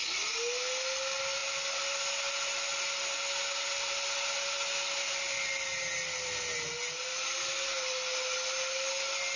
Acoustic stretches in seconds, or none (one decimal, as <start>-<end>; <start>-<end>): 0.0-9.4